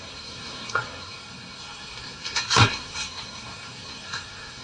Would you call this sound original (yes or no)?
no